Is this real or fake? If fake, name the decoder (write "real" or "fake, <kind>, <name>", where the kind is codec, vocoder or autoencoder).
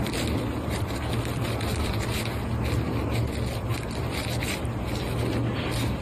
real